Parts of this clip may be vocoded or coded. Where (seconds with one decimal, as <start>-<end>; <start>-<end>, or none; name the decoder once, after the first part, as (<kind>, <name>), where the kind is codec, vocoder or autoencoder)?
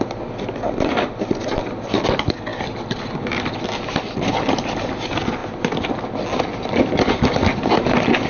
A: none